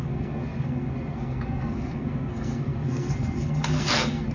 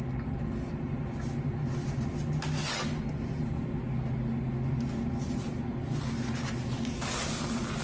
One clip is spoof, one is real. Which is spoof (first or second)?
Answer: first